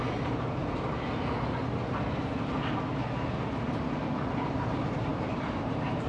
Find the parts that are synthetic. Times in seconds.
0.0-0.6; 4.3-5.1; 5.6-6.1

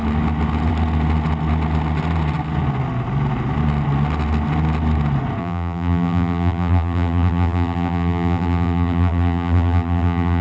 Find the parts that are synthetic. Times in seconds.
5.4-10.4

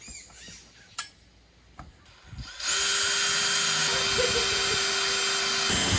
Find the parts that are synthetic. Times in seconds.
none